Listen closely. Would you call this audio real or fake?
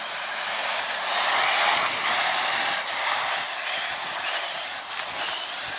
real